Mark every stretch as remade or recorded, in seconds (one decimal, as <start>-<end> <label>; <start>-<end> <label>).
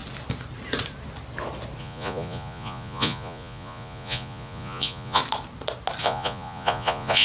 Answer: 0.0-1.8 recorded; 1.8-5.2 remade; 5.2-6.0 recorded; 6.0-7.2 remade